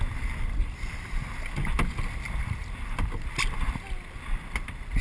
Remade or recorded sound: recorded